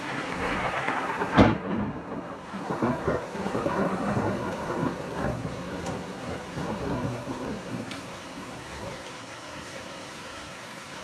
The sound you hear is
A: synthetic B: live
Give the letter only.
A